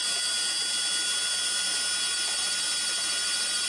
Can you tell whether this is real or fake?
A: real